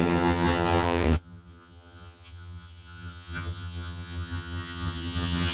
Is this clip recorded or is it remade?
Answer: remade